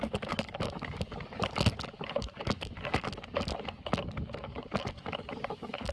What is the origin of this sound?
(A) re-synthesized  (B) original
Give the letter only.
A